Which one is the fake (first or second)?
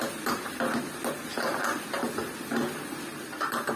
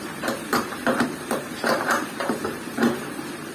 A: second